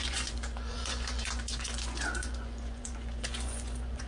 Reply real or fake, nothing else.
fake